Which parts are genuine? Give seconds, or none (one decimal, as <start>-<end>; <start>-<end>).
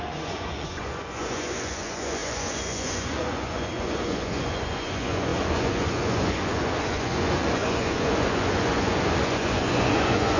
none